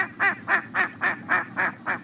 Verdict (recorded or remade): recorded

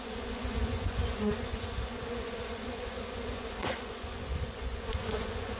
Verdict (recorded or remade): remade